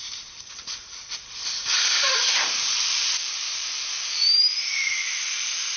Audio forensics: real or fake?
fake